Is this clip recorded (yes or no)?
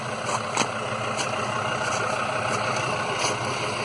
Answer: yes